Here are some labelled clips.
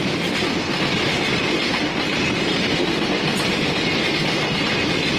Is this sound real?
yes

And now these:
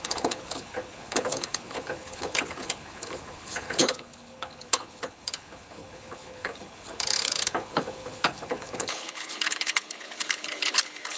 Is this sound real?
no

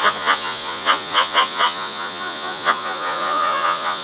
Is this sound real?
no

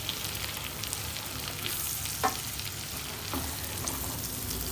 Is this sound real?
yes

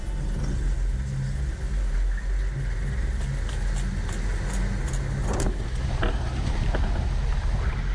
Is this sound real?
yes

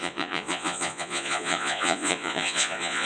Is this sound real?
no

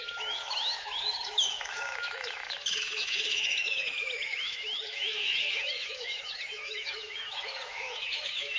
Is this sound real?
no